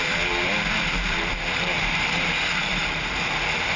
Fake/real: fake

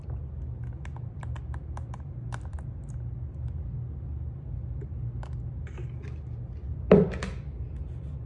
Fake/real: real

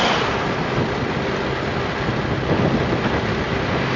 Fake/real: real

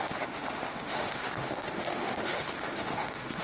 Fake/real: fake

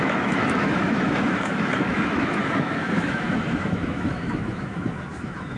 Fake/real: fake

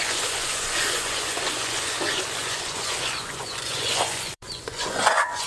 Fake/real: fake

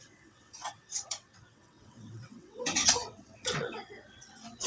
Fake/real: fake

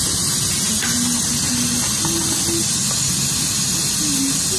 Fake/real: real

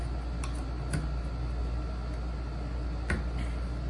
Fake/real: real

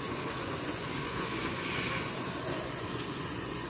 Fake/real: fake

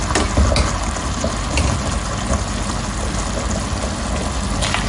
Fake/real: real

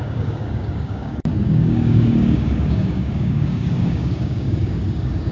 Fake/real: fake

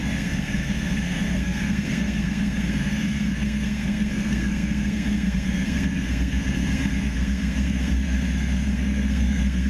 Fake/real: fake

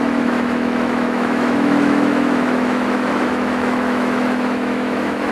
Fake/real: fake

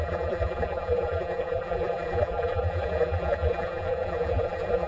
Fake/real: fake